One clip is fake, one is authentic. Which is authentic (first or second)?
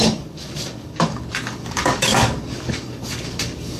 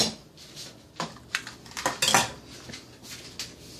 second